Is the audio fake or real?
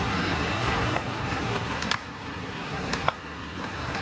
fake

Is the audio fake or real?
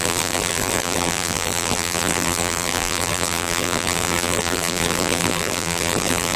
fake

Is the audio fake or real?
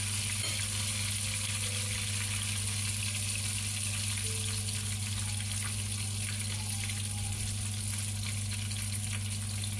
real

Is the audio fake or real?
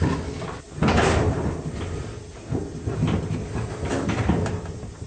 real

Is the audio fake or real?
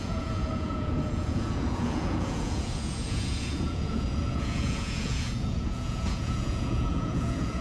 fake